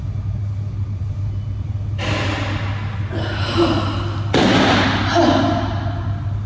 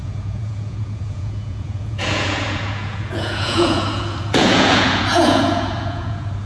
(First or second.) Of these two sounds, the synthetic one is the second